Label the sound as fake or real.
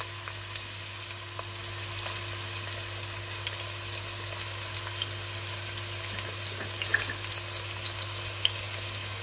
real